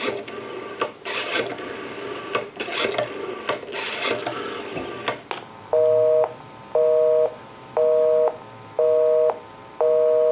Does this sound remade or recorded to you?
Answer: recorded